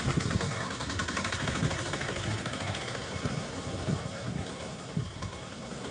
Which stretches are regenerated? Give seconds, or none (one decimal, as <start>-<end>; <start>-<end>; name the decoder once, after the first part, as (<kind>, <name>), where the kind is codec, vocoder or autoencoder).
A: 0.0-5.9 (codec, SNAC)